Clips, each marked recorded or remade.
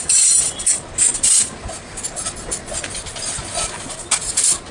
recorded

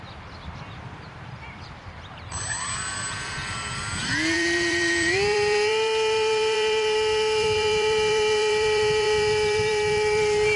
remade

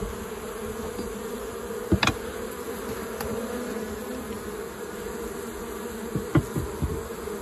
recorded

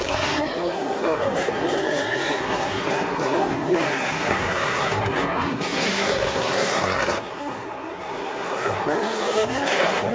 remade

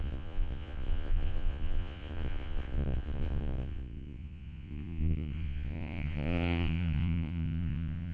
remade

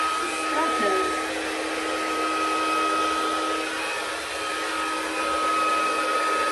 recorded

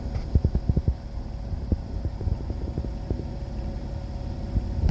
recorded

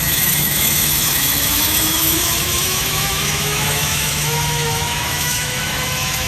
remade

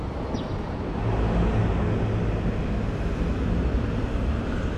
recorded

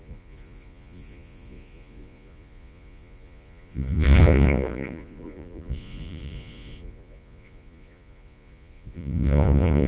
remade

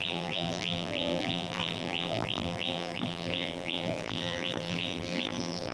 remade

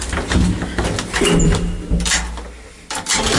recorded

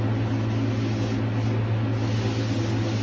recorded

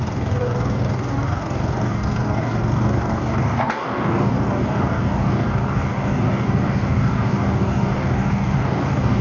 remade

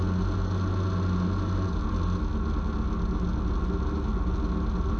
recorded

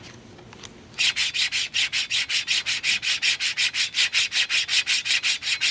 recorded